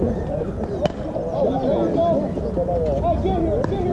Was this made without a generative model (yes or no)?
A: yes